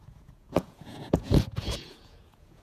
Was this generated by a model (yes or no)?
yes